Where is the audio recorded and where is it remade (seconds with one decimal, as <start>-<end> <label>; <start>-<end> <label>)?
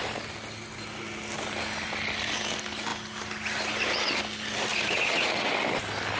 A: 0.0-4.7 recorded; 4.7-5.5 remade; 5.5-6.2 recorded